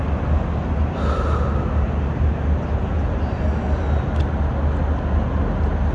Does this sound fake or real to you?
real